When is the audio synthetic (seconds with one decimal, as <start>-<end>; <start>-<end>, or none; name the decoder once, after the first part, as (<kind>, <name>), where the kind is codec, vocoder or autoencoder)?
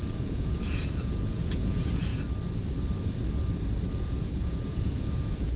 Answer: 0.0-2.1 (vocoder, Vocos); 3.9-5.6